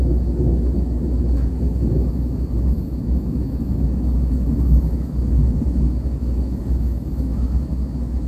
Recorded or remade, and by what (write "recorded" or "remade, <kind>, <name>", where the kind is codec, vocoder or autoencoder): remade, autoencoder, DAC-VAE